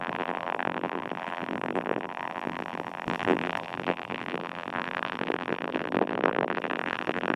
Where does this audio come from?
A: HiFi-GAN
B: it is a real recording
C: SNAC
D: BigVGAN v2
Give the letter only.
D